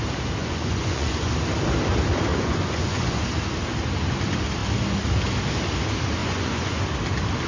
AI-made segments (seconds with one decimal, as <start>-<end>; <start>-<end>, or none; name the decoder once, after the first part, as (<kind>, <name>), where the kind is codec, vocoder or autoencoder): 0.4-1.3 (vocoder, Vocos); 2.3-3.2; 6.2-6.8